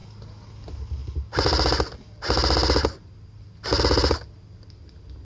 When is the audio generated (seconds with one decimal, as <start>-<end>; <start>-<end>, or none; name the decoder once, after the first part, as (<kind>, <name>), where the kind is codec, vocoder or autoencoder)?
none